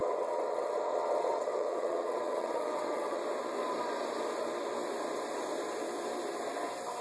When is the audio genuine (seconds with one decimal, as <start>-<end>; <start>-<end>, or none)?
3.2-7.0